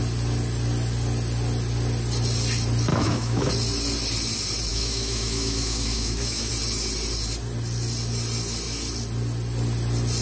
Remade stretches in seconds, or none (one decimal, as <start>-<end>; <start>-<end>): 2.9-3.5; 4.7-6.5